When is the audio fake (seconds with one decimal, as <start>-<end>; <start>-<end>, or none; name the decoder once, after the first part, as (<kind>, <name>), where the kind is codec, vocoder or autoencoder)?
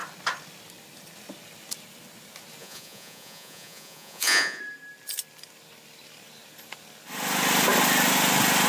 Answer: 2.6-4.6 (vocoder, Vocos)